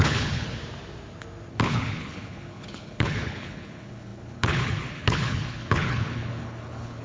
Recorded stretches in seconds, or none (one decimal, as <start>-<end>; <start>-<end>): 0.6-1.5